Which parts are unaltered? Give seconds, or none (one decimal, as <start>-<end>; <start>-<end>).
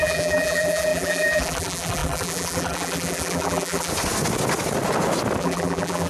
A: 3.9-5.4